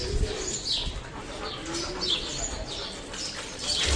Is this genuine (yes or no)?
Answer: yes